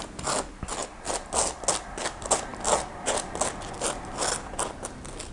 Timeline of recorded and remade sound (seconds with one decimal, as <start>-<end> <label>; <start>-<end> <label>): 0.0-5.3 recorded

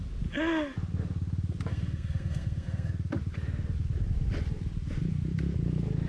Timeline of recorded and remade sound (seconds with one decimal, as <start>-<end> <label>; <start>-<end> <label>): 0.0-1.7 recorded; 1.7-2.9 remade; 2.9-6.1 recorded

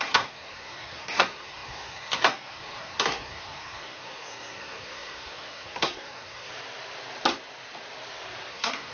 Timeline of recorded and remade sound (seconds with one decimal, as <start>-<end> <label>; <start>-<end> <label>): 0.0-6.5 remade; 6.5-8.5 recorded; 8.5-8.9 remade

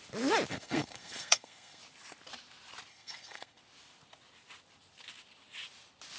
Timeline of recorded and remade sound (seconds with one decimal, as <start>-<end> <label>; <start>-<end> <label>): 0.0-0.5 recorded; 0.5-1.8 remade; 1.8-2.9 recorded; 2.9-3.6 remade; 3.6-6.2 recorded

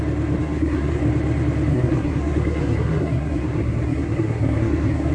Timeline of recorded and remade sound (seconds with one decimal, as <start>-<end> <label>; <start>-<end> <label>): 0.0-0.4 recorded; 0.4-1.0 remade; 1.0-1.7 recorded; 1.7-5.1 remade

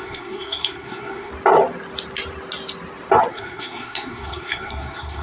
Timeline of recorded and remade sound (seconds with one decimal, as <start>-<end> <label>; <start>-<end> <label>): 0.0-1.3 remade; 1.3-3.3 recorded; 3.3-5.2 remade

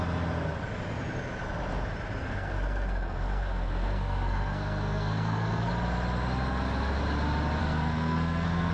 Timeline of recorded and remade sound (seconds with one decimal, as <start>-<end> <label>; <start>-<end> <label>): 0.0-2.2 recorded; 2.2-5.7 remade; 5.7-7.6 recorded; 7.6-8.7 remade